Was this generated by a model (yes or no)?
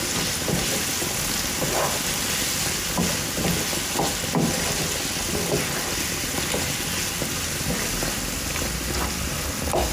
no